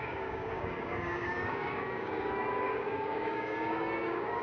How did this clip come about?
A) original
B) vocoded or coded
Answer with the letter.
B